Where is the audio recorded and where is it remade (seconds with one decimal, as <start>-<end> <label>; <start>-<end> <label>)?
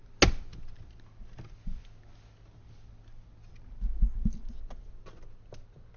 0.0-6.0 recorded